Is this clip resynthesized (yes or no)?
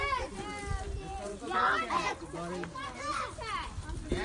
no